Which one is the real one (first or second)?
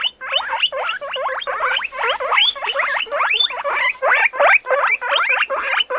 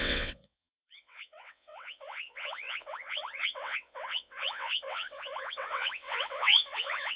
first